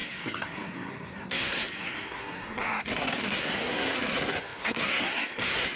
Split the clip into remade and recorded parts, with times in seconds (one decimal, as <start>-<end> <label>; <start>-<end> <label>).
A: 0.0-5.8 remade

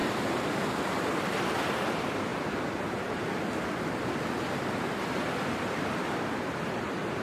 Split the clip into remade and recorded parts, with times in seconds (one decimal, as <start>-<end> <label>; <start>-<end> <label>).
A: 0.0-1.2 recorded; 1.2-2.3 remade; 2.3-3.9 recorded; 3.9-7.2 remade

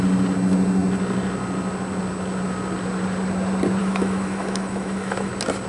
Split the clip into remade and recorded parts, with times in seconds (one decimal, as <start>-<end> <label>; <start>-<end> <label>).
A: 0.0-3.8 recorded; 3.8-5.3 remade; 5.3-5.7 recorded

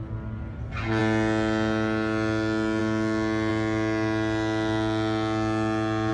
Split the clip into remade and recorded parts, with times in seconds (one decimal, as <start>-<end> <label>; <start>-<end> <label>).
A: 0.0-6.1 recorded

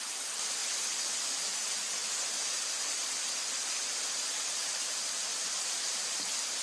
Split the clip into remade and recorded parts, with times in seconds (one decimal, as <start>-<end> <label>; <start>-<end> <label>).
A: 0.0-5.3 recorded; 5.3-6.6 remade

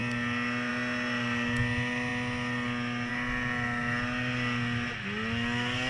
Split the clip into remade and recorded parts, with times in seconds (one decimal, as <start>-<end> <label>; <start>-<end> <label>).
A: 0.0-5.9 recorded

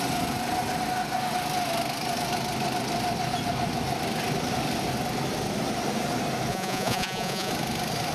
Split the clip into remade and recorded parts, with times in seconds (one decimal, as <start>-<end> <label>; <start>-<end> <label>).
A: 0.0-6.5 recorded; 6.5-7.5 remade; 7.5-8.1 recorded

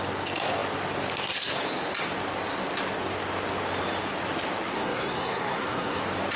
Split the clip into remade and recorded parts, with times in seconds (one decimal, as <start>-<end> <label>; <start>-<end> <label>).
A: 0.0-4.7 recorded; 4.7-6.0 remade; 6.0-6.4 recorded